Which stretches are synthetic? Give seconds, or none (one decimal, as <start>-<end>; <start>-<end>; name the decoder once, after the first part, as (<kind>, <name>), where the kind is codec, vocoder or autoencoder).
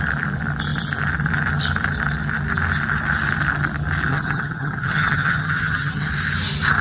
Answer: 4.1-6.1 (vocoder, HiFi-GAN)